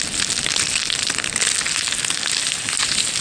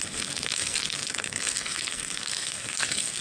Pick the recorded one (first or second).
first